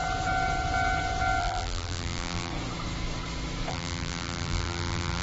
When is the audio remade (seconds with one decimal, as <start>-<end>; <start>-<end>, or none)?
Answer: 1.4-2.5; 3.7-5.2